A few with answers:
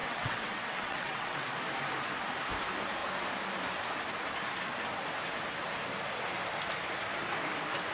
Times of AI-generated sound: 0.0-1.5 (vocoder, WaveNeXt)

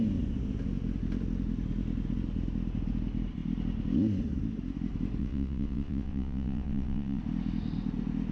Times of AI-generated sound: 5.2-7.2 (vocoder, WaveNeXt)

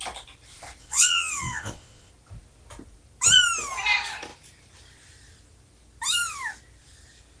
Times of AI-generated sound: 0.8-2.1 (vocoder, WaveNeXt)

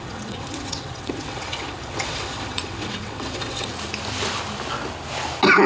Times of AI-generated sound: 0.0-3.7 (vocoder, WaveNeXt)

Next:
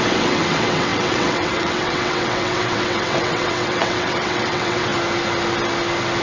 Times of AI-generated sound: 0.0-4.9 (vocoder, WaveNeXt)

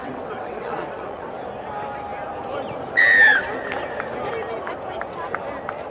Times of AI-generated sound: 0.0-1.3 (vocoder, WaveNeXt)